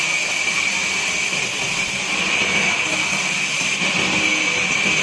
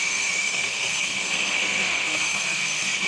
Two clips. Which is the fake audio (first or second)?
second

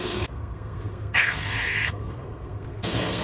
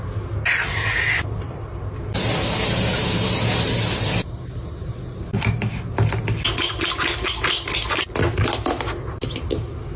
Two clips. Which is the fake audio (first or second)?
first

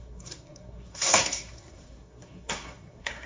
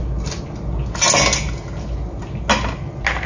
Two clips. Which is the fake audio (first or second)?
first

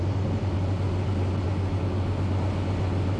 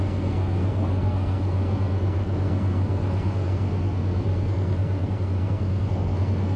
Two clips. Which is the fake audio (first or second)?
second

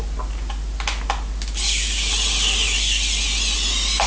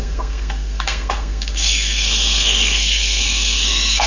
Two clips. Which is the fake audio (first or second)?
second